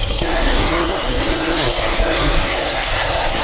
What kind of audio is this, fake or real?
fake